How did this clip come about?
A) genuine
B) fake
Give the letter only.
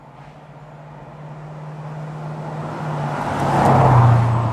A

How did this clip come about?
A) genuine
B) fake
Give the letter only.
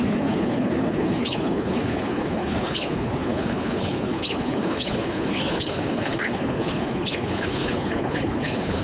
B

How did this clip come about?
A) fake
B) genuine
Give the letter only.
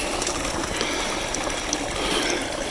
B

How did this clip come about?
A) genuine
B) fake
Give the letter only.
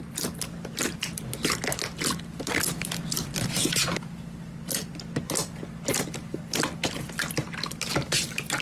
A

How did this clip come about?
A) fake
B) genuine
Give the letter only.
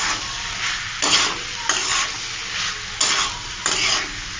B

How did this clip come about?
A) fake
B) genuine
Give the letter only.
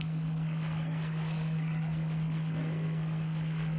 A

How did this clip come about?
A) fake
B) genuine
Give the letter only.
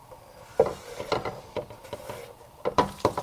B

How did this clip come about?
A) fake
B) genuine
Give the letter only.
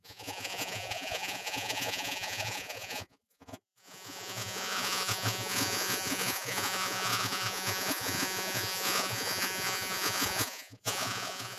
A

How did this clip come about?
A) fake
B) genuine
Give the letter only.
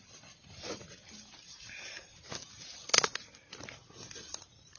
B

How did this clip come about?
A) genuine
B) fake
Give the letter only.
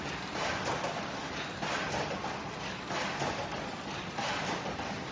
A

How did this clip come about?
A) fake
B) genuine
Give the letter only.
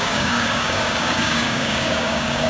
A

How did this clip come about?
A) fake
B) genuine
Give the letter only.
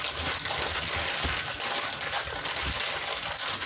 B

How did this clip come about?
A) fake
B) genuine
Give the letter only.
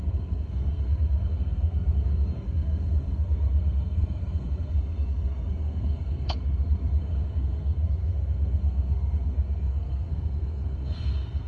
A